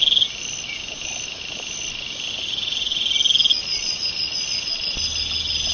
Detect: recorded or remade recorded